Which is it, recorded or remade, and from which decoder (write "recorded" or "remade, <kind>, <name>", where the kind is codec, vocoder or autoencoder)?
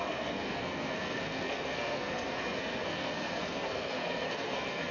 remade, codec, SNAC